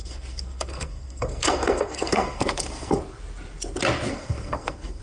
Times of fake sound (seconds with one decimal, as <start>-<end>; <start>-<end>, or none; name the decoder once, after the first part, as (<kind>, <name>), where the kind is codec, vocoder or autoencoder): 0.0-3.0 (codec, SNAC); 4.1-5.0